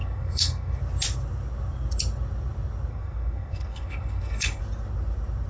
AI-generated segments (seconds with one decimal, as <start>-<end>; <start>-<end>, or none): 0.0-0.8; 2.9-4.6